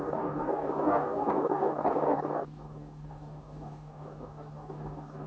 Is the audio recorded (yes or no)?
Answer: no